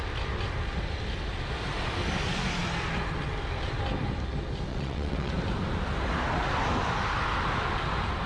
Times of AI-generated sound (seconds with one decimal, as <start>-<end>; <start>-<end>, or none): 4.7-5.3